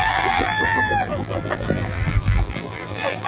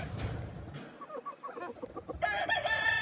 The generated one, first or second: first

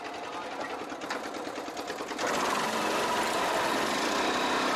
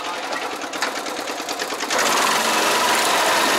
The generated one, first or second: second